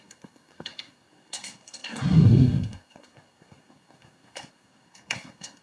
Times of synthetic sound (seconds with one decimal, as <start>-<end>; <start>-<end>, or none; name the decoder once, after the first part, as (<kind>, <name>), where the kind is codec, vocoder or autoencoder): 0.0-5.6 (codec, SNAC)

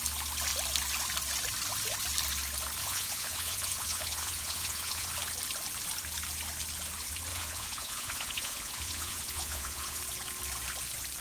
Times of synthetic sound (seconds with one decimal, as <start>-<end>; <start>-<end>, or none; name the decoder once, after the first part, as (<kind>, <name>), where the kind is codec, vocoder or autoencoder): 2.8-5.1 (vocoder, Vocos); 7.3-10.0